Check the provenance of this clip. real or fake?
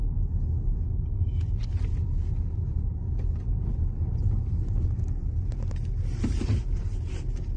real